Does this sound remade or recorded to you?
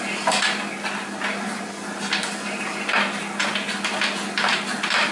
recorded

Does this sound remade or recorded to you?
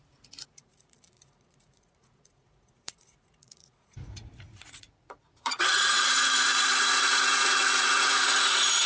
remade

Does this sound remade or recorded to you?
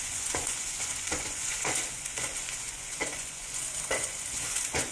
remade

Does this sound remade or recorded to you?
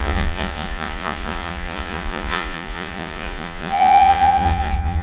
remade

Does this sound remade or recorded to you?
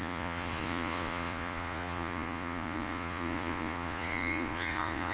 remade